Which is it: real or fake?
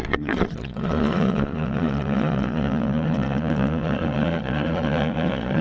fake